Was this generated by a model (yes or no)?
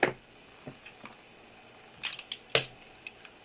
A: no